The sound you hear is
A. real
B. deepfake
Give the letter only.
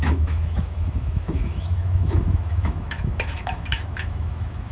B